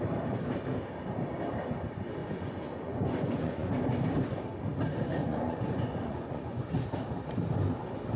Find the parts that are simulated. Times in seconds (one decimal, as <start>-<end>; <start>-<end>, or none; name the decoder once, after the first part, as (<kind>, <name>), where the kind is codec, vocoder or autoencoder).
2.2-3.7 (vocoder, Vocos); 5.2-6.7